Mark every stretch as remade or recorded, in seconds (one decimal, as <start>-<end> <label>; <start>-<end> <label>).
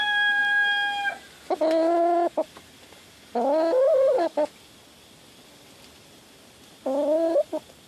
0.0-3.9 recorded; 3.9-4.6 remade; 4.6-7.9 recorded